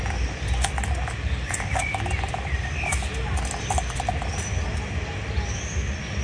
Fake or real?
real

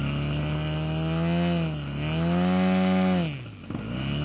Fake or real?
real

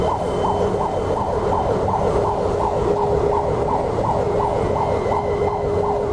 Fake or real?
real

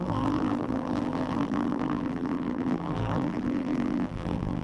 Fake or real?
fake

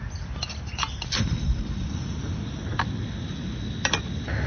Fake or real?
real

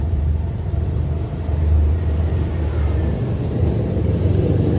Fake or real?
fake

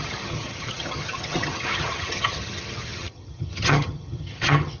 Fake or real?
fake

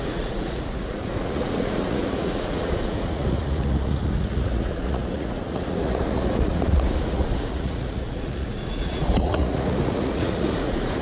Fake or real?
fake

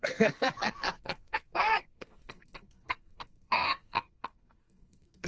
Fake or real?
fake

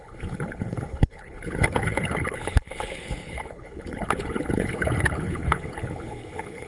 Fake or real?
fake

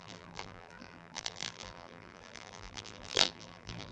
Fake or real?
fake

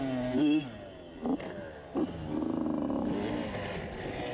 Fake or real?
real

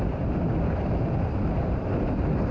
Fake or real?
real